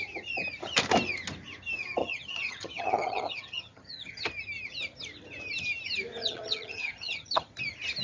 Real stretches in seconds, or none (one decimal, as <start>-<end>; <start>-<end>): 0.0-2.0; 4.3-6.2; 7.5-8.0